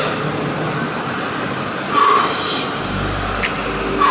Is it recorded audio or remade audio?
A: recorded